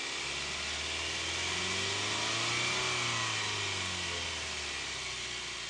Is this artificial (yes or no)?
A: no